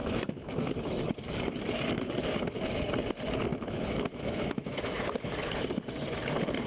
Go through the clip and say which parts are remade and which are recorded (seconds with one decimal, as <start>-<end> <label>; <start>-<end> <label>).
0.0-0.7 remade; 0.7-3.5 recorded; 3.5-5.5 remade; 5.5-6.7 recorded